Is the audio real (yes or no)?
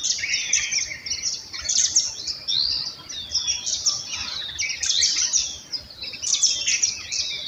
yes